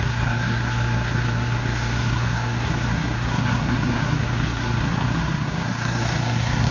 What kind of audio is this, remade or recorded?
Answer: remade